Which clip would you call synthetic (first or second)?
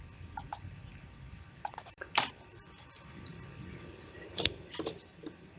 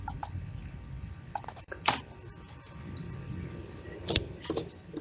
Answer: first